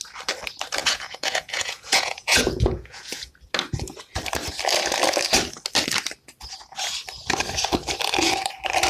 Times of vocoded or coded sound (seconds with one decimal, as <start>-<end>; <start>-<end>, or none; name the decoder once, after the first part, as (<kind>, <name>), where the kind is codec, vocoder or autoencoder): 0.8-3.3 (vocoder, Vocos)